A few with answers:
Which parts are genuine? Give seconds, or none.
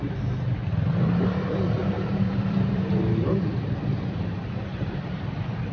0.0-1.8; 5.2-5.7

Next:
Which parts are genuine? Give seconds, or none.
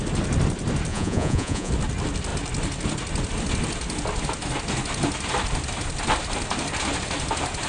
0.0-0.9; 1.7-7.7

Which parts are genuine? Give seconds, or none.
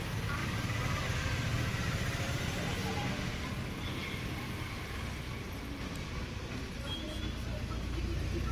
0.0-8.5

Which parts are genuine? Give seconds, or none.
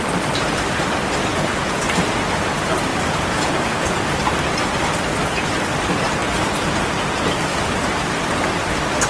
0.0-1.3; 1.8-2.9; 3.9-9.1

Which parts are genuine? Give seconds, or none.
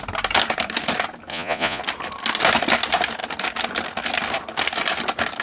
0.0-1.3; 1.8-5.4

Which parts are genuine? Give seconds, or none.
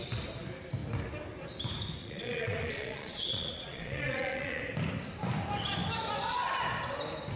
0.0-2.0; 4.6-7.4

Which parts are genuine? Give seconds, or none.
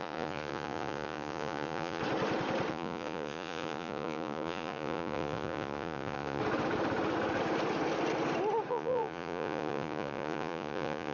2.0-2.7; 6.4-8.7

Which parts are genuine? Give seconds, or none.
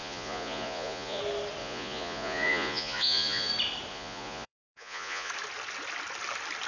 1.2-1.6; 3.5-3.9; 5.3-6.7